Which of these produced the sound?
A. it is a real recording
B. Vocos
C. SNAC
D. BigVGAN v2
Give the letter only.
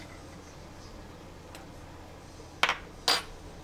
A